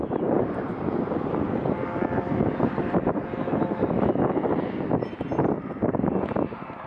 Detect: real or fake real